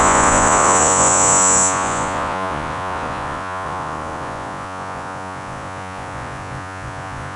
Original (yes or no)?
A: no